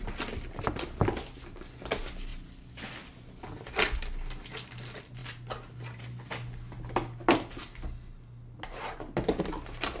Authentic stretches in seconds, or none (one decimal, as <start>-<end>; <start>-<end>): 0.0-10.0